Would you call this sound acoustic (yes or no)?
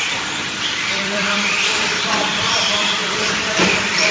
no